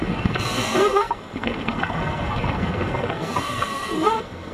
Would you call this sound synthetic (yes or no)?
yes